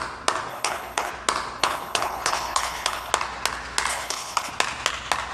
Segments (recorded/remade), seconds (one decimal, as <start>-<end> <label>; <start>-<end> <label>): 0.0-0.5 recorded; 0.5-1.1 remade; 1.1-1.6 recorded; 1.6-3.1 remade; 3.1-3.9 recorded; 3.9-4.5 remade; 4.5-5.3 recorded